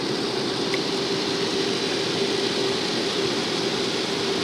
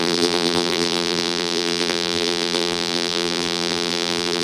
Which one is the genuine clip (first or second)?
first